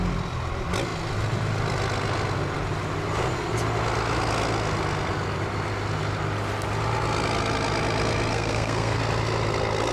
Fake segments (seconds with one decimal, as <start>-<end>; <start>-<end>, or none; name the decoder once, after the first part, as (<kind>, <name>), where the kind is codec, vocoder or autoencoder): 8.3-9.0 (codec, SNAC)